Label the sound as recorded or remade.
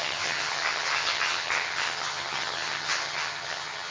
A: remade